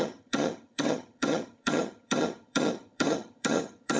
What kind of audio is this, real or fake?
fake